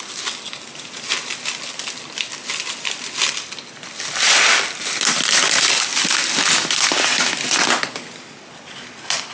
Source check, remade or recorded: recorded